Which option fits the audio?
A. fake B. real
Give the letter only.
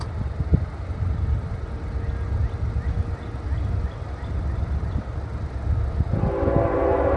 B